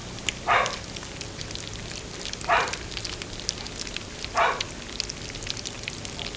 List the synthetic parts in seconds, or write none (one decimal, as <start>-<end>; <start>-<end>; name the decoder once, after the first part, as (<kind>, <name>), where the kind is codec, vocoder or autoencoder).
none